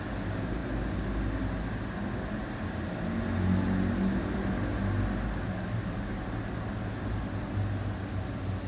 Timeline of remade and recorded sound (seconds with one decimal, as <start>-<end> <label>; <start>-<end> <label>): 0.0-8.7 recorded